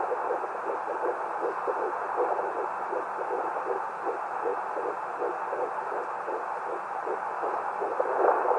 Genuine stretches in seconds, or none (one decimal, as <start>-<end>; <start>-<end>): 0.0-8.6